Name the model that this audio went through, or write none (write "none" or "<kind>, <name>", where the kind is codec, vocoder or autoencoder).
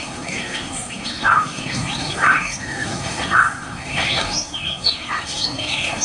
codec, SNAC